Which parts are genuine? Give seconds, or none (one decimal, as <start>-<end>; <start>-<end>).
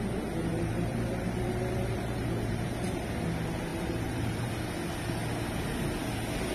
0.0-0.5; 3.1-3.7; 4.5-6.5